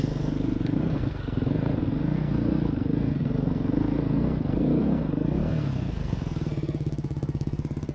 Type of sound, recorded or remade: remade